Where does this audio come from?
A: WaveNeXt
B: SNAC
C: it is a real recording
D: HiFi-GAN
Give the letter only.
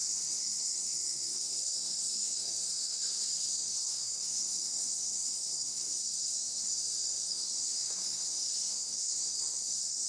B